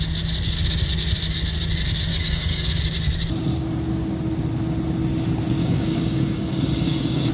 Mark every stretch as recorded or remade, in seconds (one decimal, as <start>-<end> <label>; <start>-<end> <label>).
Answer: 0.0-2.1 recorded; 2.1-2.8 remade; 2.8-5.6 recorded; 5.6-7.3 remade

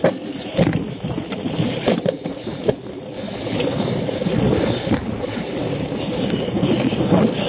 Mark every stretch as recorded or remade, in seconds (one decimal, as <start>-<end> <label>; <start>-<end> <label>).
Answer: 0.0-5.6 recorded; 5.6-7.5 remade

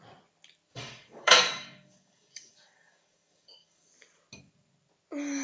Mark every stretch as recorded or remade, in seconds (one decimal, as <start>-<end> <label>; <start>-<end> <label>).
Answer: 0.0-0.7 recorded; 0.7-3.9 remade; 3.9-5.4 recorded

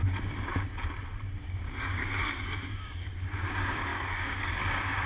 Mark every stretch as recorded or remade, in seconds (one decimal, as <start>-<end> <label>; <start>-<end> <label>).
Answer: 0.0-1.8 recorded; 1.8-5.1 remade